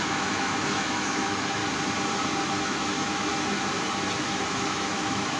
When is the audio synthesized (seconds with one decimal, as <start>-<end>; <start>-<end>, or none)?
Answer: 0.0-1.6; 2.6-3.3; 4.4-5.4